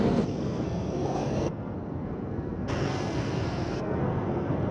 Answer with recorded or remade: remade